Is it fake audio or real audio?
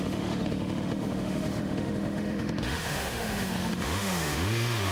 fake